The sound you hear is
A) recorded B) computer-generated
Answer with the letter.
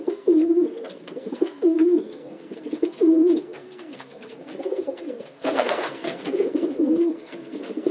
B